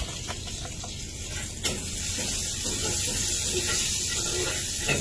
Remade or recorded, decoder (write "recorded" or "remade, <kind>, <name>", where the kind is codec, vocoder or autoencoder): recorded